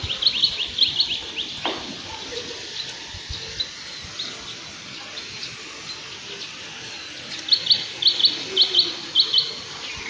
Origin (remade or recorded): recorded